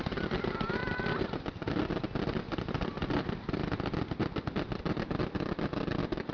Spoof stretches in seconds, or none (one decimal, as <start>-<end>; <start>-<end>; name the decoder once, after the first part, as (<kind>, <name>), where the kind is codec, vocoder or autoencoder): 0.8-1.7 (vocoder, BigVGAN v2)